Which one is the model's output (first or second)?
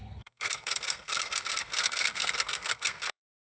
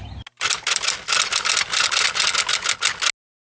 first